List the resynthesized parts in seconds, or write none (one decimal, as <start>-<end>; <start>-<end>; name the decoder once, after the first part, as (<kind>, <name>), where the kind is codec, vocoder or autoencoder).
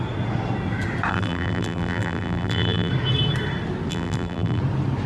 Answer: 1.1-2.9 (vocoder, BigVGAN v2); 3.9-4.6